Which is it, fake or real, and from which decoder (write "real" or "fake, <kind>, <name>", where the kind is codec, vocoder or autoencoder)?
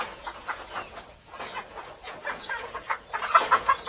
fake, vocoder, Vocos